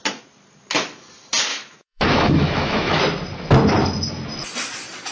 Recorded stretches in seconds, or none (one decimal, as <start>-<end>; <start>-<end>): 0.0-1.5; 3.0-5.1